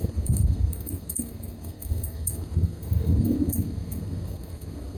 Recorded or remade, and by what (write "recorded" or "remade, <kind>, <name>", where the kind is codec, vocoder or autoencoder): remade, codec, SNAC